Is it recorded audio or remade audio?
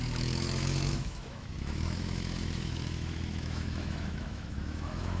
remade